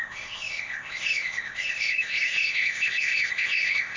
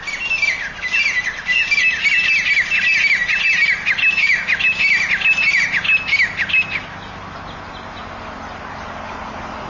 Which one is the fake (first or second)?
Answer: first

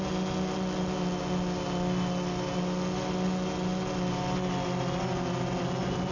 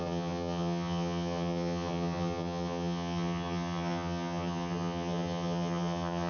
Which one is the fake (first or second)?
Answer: second